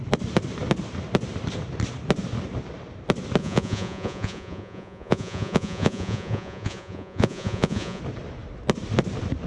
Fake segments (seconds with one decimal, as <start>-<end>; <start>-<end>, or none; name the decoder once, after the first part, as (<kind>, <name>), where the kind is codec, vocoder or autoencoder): 3.4-8.0 (vocoder, Vocos)